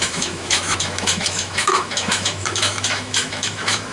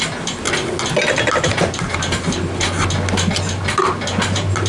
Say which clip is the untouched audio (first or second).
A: second